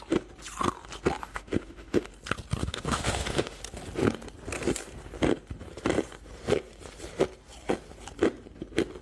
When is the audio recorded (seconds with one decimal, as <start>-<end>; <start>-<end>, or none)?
0.0-1.2; 2.1-2.6; 3.6-9.0